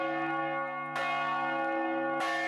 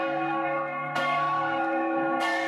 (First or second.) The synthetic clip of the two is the second